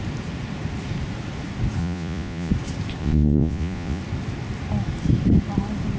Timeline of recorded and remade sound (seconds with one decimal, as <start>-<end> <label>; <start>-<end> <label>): 0.0-1.8 recorded; 1.8-2.5 remade; 2.5-3.0 recorded; 3.0-4.0 remade; 4.0-6.0 recorded

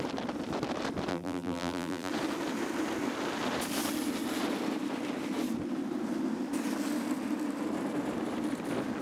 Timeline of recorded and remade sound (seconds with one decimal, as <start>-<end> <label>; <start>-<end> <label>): 0.0-1.1 recorded; 1.1-2.1 remade; 2.1-9.0 recorded

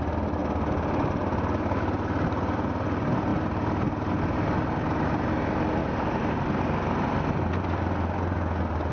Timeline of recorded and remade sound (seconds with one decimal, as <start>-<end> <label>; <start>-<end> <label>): 0.0-0.4 recorded; 0.4-1.2 remade; 1.2-5.8 recorded; 5.8-6.6 remade; 6.6-8.9 recorded

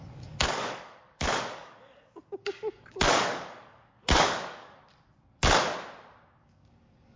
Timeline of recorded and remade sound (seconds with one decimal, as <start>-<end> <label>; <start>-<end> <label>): 0.0-4.8 remade; 4.8-6.4 recorded; 6.4-7.2 remade